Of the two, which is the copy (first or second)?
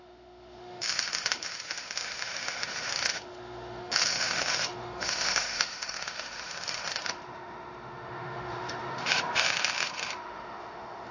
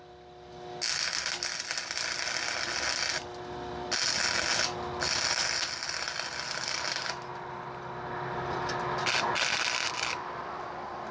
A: first